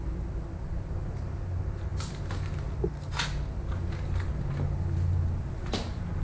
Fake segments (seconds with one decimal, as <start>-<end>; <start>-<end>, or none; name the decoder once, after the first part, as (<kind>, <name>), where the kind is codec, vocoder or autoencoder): none